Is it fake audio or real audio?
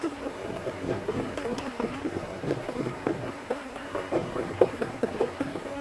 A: fake